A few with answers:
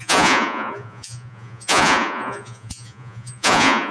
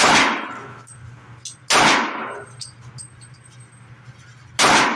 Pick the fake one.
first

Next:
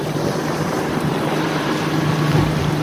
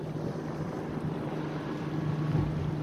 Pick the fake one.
first